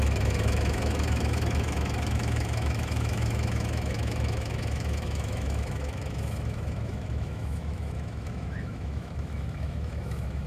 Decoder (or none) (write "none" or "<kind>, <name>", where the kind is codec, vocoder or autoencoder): autoencoder, DAC-VAE